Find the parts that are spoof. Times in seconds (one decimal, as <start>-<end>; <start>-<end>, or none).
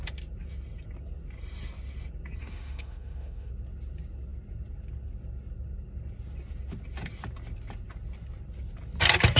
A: 2.4-3.5